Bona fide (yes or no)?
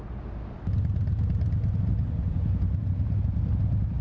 yes